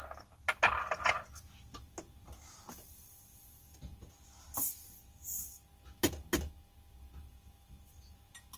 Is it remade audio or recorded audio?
recorded